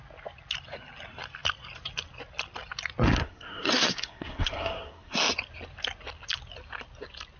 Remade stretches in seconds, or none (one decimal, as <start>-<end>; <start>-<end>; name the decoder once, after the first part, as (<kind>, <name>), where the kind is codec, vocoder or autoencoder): 3.2-5.2 (codec, SNAC)